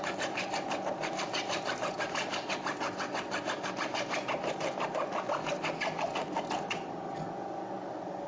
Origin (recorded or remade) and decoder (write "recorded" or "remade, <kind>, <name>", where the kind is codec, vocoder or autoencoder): recorded